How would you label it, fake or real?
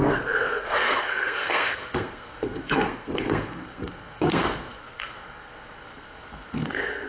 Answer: fake